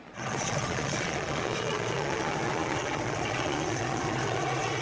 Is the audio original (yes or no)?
no